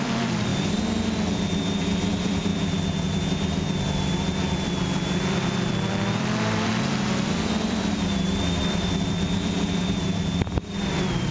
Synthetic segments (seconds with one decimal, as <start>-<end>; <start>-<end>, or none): 0.0-11.3